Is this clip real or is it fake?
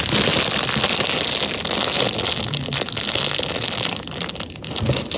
real